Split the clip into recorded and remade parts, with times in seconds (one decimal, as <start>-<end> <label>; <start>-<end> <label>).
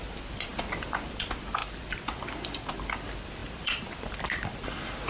0.0-5.1 remade